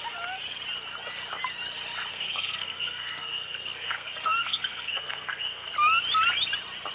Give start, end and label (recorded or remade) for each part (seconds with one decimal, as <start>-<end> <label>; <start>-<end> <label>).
0.0-2.1 recorded; 2.1-5.7 remade; 5.7-6.9 recorded